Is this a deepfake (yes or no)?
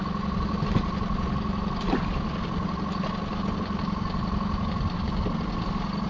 no